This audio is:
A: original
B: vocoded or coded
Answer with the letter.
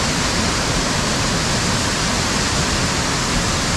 A